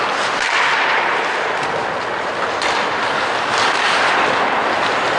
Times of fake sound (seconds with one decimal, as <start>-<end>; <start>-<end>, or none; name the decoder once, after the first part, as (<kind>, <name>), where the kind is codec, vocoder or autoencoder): none